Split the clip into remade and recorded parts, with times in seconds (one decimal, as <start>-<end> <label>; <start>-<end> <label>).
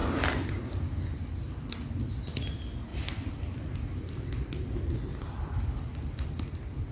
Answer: 0.0-2.9 recorded; 2.9-6.2 remade; 6.2-6.9 recorded